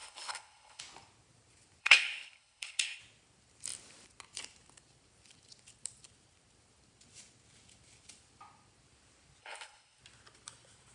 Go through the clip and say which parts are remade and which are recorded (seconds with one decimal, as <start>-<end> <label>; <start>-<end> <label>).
0.0-0.8 remade; 0.8-1.8 recorded; 1.8-3.0 remade; 3.0-9.4 recorded; 9.4-10.0 remade; 10.0-10.9 recorded